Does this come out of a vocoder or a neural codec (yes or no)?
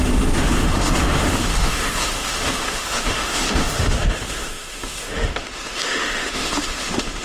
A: yes